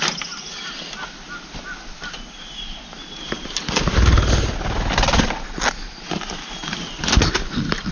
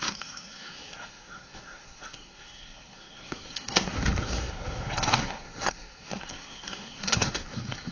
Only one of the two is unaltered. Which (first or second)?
first